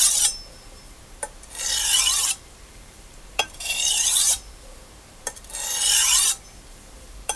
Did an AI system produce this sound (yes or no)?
yes